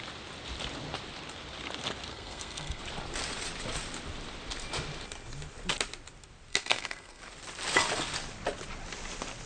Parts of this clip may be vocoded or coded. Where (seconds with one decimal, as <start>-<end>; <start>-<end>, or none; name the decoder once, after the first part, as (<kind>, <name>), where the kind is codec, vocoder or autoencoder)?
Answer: 2.1-2.8 (codec, SNAC); 6.5-7.2